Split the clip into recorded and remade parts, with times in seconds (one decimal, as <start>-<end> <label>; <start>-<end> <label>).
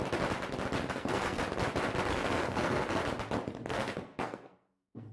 0.0-0.9 recorded; 0.9-1.4 remade; 1.4-2.1 recorded; 2.1-3.0 remade; 3.0-3.7 recorded; 3.7-5.1 remade